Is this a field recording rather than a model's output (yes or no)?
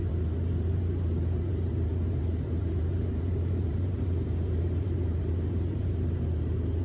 no